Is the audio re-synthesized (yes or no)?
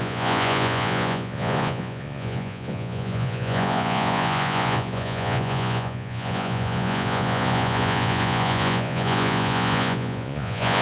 yes